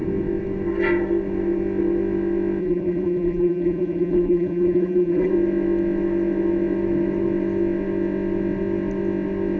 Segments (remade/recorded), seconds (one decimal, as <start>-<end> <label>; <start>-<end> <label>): 0.0-2.6 recorded; 2.6-5.3 remade; 5.3-9.6 recorded